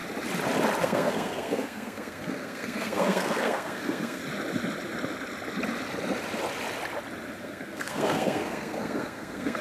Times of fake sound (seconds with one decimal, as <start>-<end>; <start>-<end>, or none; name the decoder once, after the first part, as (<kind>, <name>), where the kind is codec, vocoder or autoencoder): 0.8-4.2 (codec, SNAC); 7.4-9.6